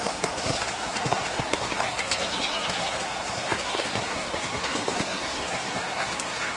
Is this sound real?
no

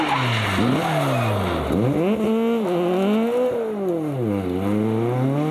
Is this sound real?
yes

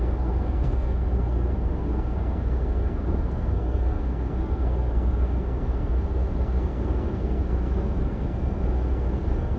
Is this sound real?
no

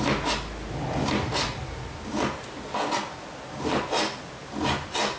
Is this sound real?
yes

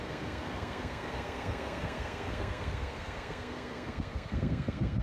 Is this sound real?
no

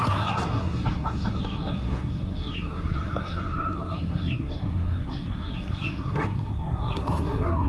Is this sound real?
no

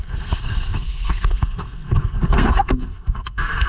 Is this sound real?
no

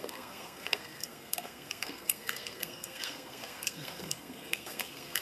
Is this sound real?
no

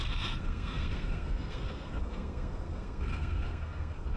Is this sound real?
no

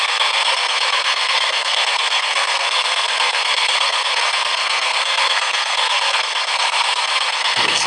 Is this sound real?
no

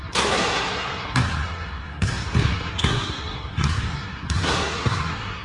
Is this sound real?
no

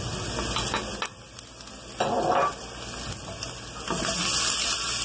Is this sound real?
yes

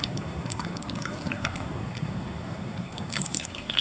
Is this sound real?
no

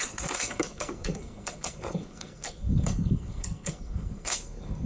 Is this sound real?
no